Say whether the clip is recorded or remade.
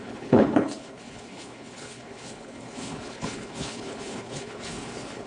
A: remade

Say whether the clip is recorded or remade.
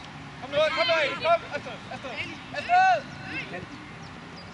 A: recorded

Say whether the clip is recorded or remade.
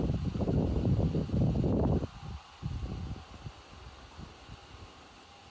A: recorded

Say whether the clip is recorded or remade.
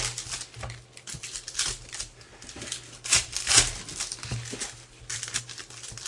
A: recorded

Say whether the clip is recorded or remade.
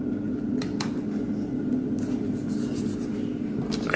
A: recorded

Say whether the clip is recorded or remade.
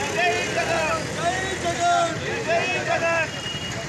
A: recorded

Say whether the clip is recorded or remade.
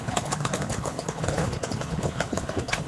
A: remade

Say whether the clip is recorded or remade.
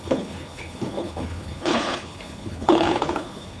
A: remade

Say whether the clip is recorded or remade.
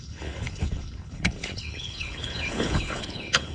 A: remade